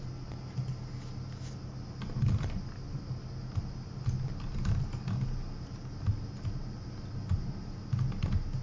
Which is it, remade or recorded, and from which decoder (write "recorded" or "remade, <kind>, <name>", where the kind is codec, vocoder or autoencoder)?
recorded